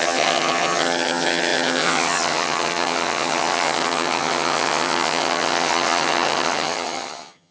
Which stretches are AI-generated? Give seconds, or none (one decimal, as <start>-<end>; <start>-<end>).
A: 0.0-7.5